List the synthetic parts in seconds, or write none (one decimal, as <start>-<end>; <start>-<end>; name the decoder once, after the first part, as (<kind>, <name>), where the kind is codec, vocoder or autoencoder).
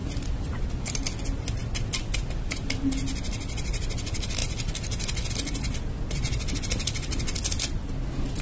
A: none